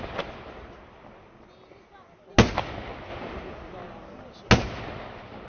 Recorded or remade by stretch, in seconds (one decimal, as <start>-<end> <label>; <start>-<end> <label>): 0.0-5.5 recorded